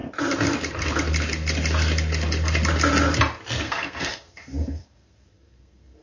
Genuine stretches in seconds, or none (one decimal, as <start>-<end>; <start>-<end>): 0.0-3.6